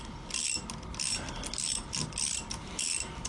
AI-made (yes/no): no